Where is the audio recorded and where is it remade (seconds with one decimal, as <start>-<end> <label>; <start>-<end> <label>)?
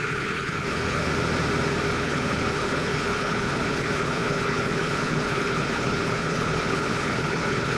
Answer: 0.0-1.1 remade; 1.1-1.9 recorded; 1.9-7.8 remade